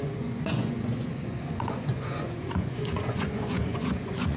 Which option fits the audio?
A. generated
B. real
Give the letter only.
A